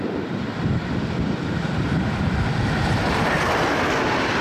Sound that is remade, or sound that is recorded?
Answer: remade